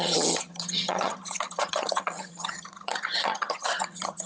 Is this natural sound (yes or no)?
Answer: no